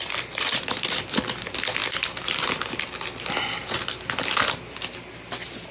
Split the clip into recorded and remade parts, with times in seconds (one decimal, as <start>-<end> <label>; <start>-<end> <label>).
0.0-5.7 recorded